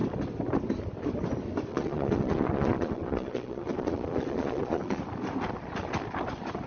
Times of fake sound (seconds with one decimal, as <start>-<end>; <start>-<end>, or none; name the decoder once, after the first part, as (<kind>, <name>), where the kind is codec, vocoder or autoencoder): 1.7-5.0 (vocoder, Vocos)

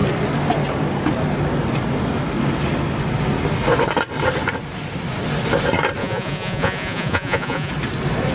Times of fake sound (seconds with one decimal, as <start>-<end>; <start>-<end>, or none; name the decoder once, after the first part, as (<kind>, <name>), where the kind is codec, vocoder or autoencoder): 6.0-7.7 (vocoder, Vocos)

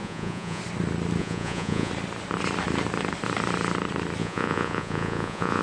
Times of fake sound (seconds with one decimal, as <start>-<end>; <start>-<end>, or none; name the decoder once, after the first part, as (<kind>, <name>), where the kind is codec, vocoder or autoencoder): 0.0-0.6 (vocoder, Vocos); 1.2-1.9; 4.2-5.6

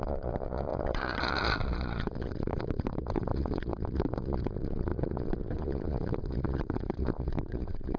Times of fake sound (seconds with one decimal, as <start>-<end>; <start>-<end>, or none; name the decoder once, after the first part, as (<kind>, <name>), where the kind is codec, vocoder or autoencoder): 0.0-8.0 (vocoder, Vocos)

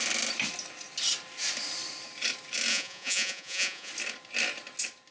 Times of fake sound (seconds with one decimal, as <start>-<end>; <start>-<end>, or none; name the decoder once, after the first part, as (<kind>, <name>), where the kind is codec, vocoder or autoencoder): 2.7-3.9 (vocoder, Vocos)